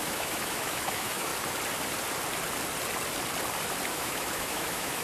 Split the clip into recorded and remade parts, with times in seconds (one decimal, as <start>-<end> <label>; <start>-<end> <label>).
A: 0.0-1.3 remade; 1.3-3.9 recorded; 3.9-5.0 remade